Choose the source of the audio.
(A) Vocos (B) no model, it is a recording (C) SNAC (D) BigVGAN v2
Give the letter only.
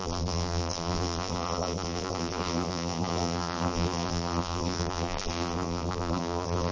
D